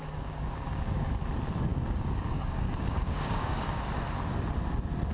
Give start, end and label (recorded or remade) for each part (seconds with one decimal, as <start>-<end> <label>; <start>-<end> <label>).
0.0-1.1 remade; 1.1-1.7 recorded; 1.7-3.8 remade; 3.8-5.1 recorded